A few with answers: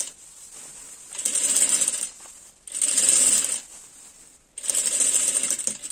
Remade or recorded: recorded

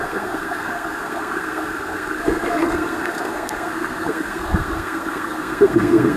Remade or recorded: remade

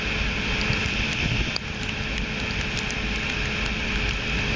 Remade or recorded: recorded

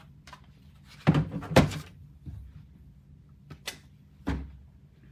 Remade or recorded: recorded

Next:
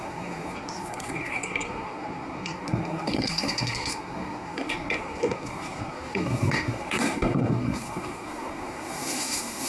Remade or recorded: remade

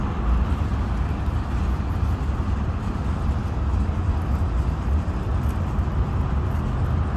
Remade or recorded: recorded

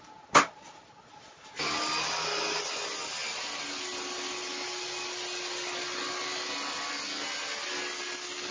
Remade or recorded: recorded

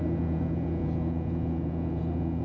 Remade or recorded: remade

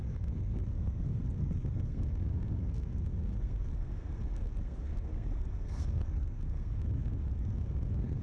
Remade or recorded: remade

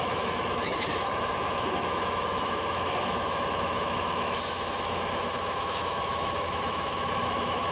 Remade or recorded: remade